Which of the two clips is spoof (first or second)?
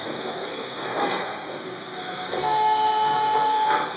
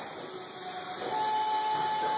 first